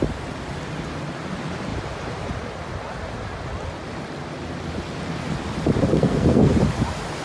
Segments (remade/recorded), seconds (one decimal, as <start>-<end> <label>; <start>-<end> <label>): 0.0-5.9 recorded; 5.9-6.5 remade; 6.5-7.2 recorded